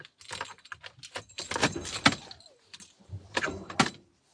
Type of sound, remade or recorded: recorded